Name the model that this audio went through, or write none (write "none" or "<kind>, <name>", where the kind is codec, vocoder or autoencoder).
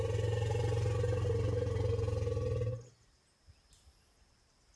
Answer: none